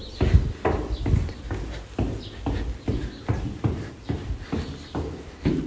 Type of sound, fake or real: real